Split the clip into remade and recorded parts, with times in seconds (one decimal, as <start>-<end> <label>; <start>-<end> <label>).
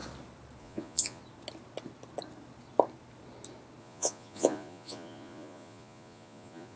0.0-0.6 recorded; 0.6-1.2 remade; 1.2-3.8 recorded; 3.8-6.8 remade